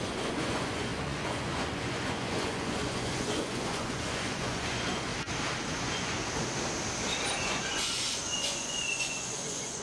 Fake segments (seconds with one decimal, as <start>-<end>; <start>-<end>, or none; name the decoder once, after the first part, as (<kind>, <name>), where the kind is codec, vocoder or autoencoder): 0.0-5.1 (vocoder, Vocos); 5.7-6.2; 7.4-9.8